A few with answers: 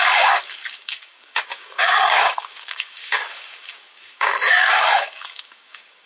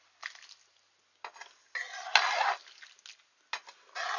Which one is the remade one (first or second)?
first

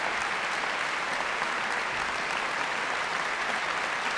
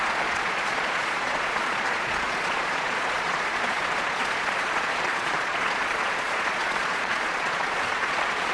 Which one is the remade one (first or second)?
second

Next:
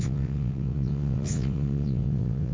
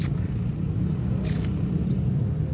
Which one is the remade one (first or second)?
first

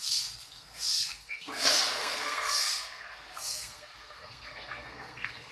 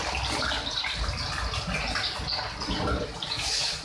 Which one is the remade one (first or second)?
first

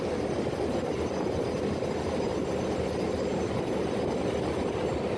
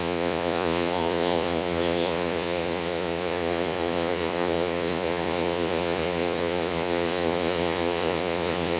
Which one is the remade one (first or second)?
second